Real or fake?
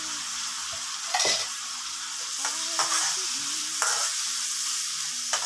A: fake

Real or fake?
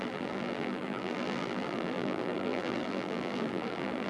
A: fake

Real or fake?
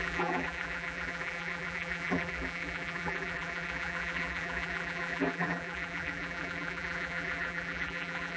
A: fake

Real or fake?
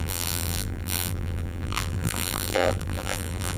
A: fake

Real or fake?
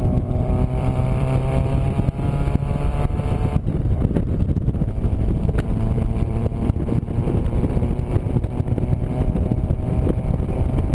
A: fake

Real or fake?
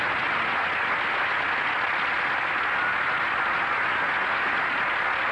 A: real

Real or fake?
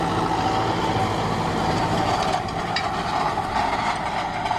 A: real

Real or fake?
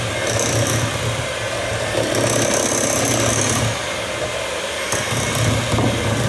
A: real